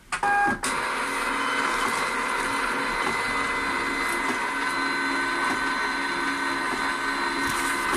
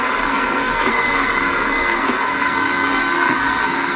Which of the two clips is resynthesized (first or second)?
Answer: second